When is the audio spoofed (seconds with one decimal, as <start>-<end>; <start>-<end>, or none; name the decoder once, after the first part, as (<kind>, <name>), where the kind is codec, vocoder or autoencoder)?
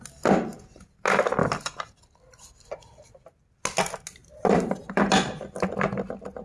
4.2-5.0 (vocoder, BigVGAN v2)